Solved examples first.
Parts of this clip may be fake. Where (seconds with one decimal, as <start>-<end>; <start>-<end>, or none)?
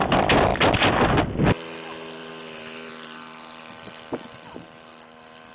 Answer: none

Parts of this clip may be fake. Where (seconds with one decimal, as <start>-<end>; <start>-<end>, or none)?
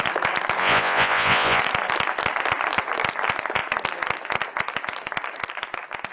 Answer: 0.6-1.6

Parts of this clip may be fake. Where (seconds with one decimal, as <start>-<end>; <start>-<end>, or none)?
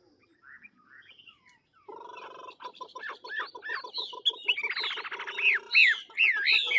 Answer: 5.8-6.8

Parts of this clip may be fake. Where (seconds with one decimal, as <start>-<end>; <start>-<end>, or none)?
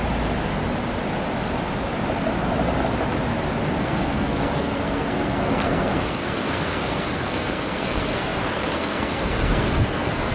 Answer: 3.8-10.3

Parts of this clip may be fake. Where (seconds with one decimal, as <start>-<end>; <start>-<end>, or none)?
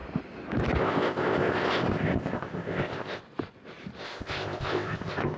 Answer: 0.8-3.2; 4.0-5.4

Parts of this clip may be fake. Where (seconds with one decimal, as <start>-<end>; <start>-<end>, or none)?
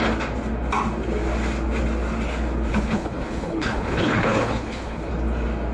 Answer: 2.7-5.1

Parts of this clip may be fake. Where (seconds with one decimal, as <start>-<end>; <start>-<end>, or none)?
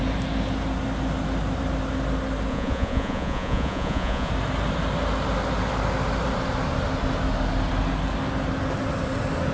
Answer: 2.5-4.3